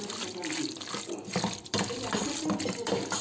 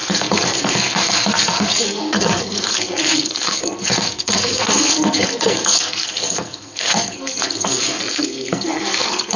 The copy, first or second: second